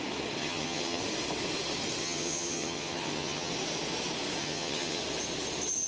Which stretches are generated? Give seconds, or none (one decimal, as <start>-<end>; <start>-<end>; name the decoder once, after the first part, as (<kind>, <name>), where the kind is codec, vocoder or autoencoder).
0.4-1.0 (vocoder, HiFi-GAN); 2.0-3.5; 4.4-5.0